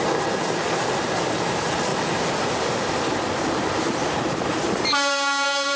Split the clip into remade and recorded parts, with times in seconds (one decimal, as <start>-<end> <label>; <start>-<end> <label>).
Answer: 0.0-1.9 recorded; 1.9-5.8 remade